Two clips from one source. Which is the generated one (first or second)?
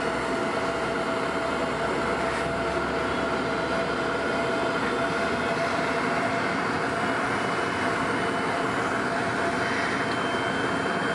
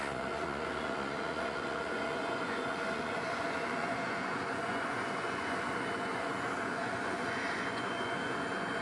second